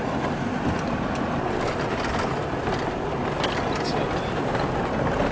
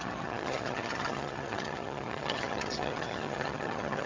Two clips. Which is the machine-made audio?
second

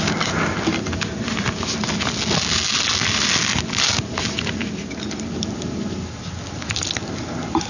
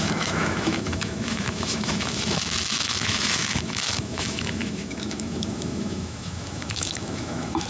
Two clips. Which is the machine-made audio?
second